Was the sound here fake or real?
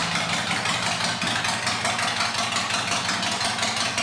real